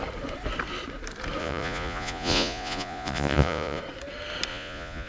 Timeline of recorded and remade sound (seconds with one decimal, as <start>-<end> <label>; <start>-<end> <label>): 0.0-1.4 recorded; 1.4-3.8 remade; 3.8-4.5 recorded; 4.5-5.1 remade